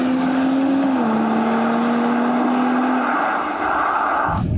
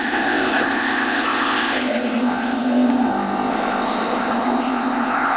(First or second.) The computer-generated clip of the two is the second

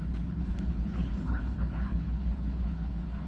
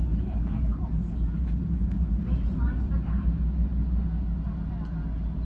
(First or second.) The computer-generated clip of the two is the first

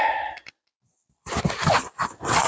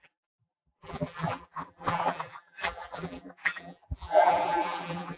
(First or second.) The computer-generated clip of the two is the second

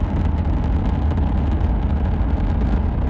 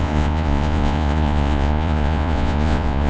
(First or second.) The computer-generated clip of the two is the second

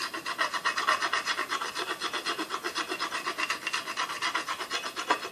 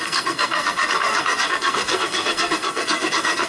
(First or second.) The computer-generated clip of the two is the second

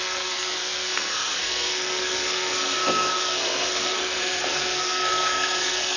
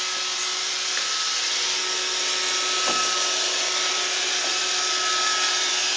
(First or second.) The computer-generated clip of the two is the first